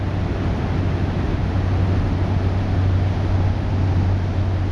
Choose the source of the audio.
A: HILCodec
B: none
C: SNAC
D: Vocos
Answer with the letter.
B